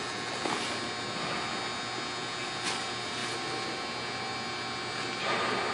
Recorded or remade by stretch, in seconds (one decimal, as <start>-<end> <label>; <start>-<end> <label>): 0.0-5.7 recorded

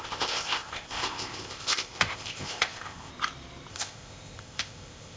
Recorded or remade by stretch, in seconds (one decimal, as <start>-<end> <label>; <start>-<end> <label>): 0.0-3.1 remade; 3.1-3.7 recorded; 3.7-5.2 remade

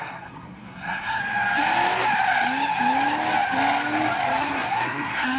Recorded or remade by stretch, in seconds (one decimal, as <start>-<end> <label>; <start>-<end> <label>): 0.0-1.2 remade; 1.2-4.4 recorded; 4.4-5.4 remade

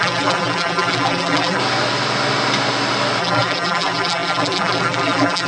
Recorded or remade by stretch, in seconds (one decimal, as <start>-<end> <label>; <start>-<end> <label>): 0.0-1.6 remade; 1.6-3.2 recorded; 3.2-5.5 remade

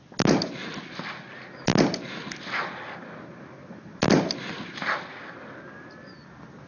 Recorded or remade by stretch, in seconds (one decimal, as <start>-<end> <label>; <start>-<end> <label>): 0.0-6.7 recorded